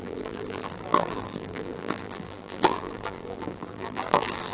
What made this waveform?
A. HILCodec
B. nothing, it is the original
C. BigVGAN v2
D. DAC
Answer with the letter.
C